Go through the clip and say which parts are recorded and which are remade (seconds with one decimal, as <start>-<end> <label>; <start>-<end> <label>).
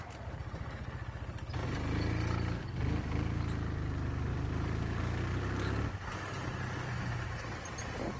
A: 0.0-8.2 recorded